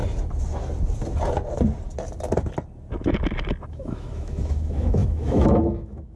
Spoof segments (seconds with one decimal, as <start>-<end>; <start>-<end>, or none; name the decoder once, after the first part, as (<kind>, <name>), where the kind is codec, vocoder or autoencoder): 3.7-6.2 (autoencoder, DAC-VAE)